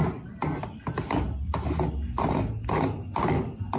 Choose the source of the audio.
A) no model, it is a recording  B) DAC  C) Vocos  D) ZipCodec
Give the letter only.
A